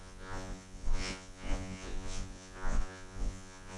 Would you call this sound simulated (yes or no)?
yes